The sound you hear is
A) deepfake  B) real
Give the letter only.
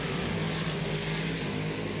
B